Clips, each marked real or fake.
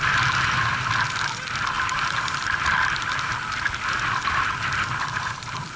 real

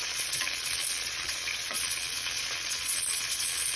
fake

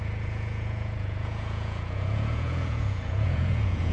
fake